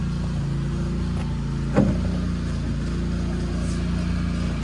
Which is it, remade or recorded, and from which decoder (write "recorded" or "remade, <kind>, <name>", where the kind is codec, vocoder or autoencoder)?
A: recorded